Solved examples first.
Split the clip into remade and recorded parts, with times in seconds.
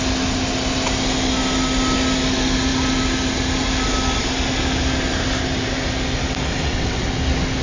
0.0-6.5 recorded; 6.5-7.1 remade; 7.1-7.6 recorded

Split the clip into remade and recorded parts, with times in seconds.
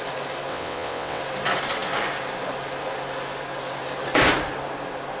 0.0-0.5 recorded; 0.5-1.2 remade; 1.2-5.2 recorded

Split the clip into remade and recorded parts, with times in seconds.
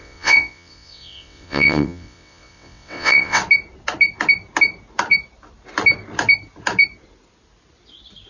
0.0-3.4 remade; 3.4-8.3 recorded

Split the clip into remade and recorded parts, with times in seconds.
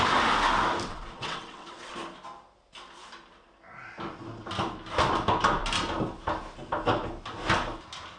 0.0-0.9 recorded; 0.9-1.9 remade; 1.9-8.2 recorded